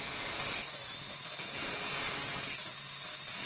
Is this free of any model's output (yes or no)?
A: yes